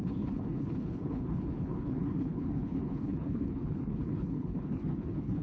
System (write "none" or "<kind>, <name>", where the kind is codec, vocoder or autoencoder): codec, HILCodec